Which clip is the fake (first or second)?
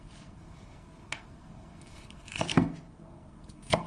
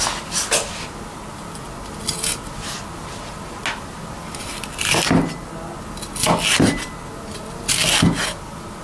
first